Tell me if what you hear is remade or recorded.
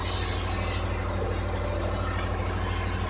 recorded